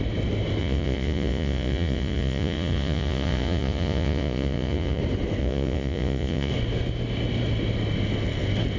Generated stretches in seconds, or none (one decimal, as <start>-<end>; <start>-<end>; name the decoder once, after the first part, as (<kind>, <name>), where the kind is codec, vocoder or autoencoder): 0.6-5.0 (vocoder, Vocos); 5.4-6.5